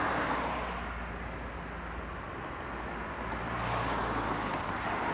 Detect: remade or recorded recorded